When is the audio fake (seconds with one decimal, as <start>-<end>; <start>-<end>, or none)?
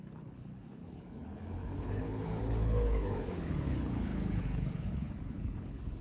0.0-6.0